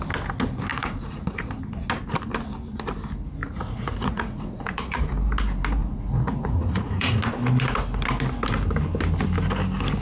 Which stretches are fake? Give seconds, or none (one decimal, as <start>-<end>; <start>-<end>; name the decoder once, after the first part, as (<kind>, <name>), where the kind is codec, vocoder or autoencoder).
0.7-1.5 (vocoder, Vocos); 3.4-5.0; 5.8-7.2